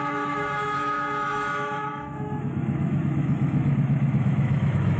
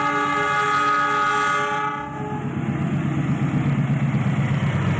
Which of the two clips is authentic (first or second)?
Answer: second